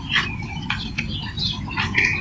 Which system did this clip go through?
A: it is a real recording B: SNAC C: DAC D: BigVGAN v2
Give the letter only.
A